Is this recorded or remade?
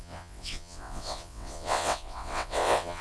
remade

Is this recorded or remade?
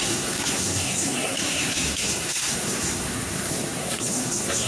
remade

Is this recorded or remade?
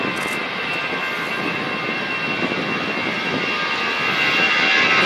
recorded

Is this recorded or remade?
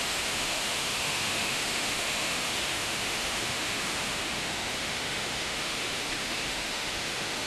remade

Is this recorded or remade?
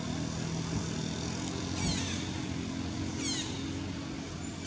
recorded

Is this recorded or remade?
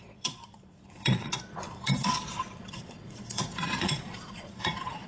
remade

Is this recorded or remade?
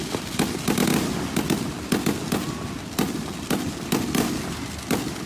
recorded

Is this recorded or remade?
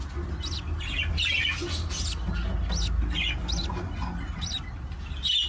recorded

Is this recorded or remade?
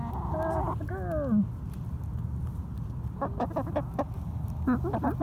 recorded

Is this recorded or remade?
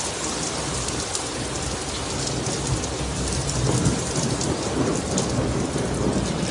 recorded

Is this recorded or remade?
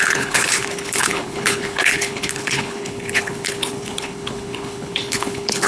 remade